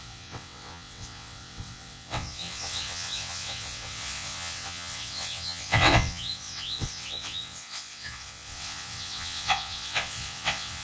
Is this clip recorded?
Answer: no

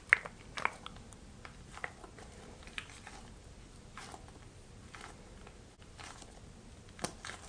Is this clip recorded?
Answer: yes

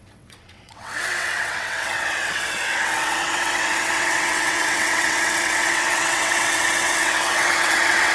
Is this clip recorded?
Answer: no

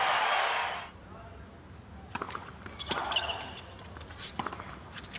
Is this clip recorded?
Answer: yes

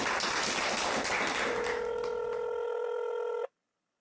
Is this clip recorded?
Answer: yes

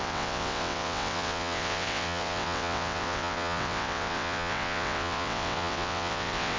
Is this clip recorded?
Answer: no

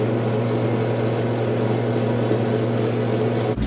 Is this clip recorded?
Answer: yes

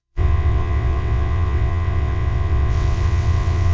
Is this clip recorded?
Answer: no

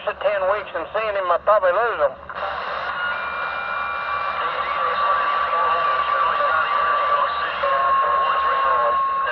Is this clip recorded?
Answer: yes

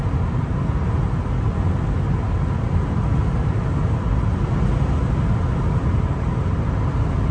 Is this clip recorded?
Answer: yes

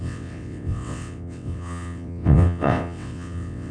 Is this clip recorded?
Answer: no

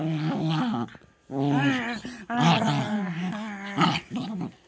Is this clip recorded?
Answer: yes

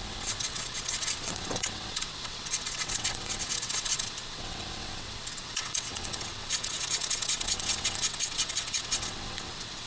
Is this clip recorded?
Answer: no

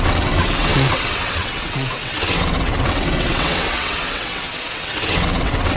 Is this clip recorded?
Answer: no